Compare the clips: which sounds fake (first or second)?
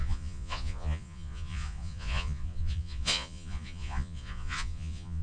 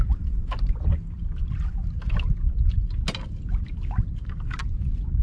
first